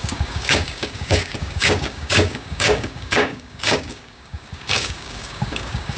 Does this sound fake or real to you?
fake